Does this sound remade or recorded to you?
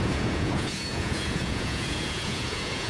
remade